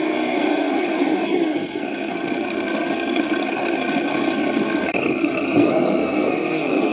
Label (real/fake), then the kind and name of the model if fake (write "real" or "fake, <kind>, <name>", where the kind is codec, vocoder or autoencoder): fake, codec, SNAC